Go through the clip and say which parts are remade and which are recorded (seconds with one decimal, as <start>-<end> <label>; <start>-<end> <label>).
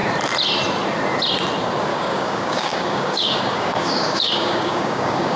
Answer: 0.0-1.9 recorded; 1.9-5.4 remade